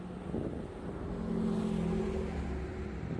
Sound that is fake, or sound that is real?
real